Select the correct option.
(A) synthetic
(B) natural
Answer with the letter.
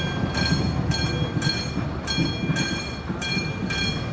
B